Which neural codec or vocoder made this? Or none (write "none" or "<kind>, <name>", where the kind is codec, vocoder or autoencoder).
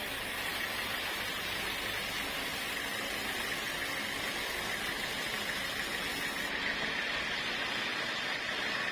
none